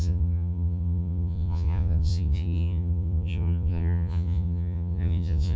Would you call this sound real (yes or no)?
no